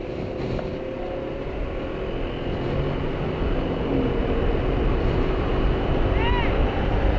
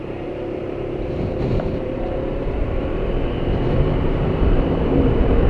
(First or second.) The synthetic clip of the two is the second